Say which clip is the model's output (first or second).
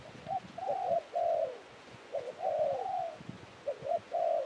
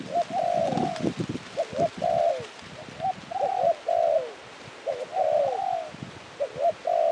first